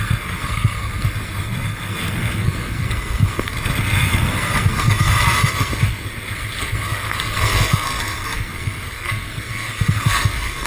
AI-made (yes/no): yes